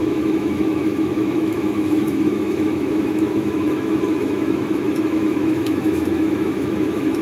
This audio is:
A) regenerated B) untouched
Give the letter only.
A